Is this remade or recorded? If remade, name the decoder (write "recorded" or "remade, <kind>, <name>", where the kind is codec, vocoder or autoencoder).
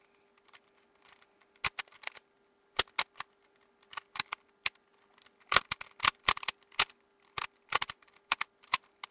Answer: recorded